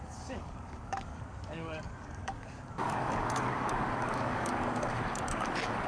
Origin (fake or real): fake